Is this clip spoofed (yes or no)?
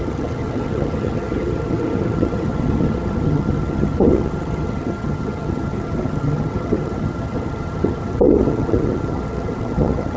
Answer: yes